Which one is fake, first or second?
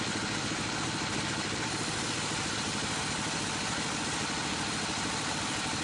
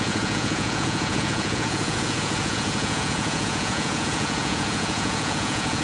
second